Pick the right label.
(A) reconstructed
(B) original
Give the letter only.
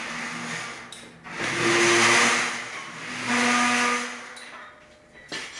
B